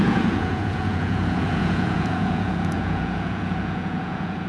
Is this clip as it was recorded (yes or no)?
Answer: no